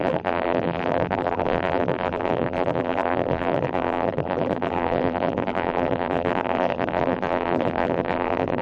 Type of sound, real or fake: fake